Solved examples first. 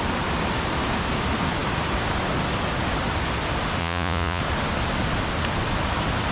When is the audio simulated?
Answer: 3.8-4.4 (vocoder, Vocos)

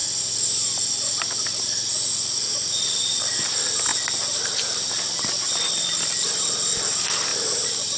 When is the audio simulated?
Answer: 7.3-8.0 (vocoder, BigVGAN v2)

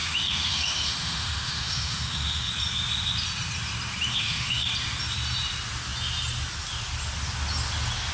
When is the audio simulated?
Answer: 0.0-2.5 (autoencoder, DAC-VAE); 4.1-4.7

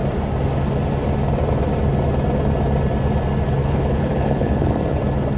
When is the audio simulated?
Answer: 3.6-4.7 (codec, HILCodec)